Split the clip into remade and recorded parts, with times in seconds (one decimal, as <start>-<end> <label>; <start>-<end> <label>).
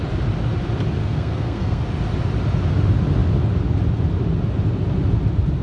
0.0-1.0 recorded; 1.0-1.8 remade; 1.8-5.6 recorded